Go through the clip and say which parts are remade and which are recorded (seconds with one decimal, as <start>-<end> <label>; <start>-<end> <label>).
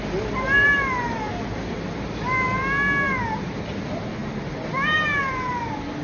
0.0-6.0 recorded